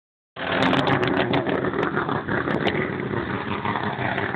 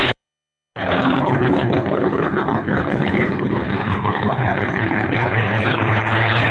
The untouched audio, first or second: first